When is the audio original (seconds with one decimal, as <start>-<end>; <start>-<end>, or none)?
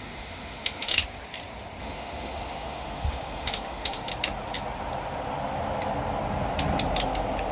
1.0-1.8; 4.1-7.5